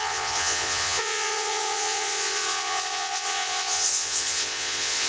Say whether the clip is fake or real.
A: fake